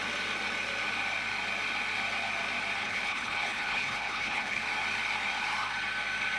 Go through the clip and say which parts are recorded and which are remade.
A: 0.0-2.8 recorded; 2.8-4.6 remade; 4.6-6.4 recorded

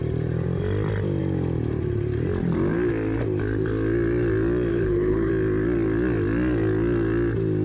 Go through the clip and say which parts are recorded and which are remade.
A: 0.0-4.7 recorded; 4.7-5.3 remade; 5.3-7.6 recorded

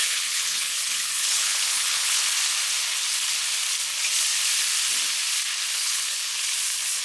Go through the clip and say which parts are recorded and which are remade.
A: 0.0-2.2 remade; 2.2-5.7 recorded; 5.7-6.3 remade; 6.3-7.0 recorded

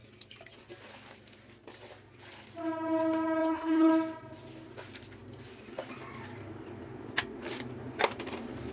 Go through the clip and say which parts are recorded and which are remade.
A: 0.0-3.4 recorded; 3.4-3.9 remade; 3.9-8.7 recorded

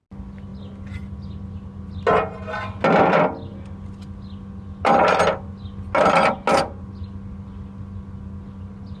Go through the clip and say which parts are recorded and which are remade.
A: 0.0-9.0 recorded

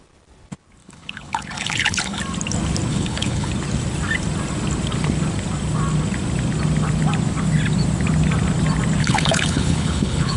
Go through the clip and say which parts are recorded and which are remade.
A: 0.0-0.8 recorded; 0.8-2.2 remade; 2.2-2.9 recorded; 2.9-3.5 remade; 3.5-9.0 recorded; 9.0-10.4 remade

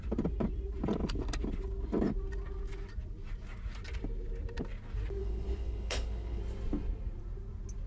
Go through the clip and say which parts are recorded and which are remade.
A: 0.0-5.2 recorded; 5.2-6.4 remade; 6.4-7.9 recorded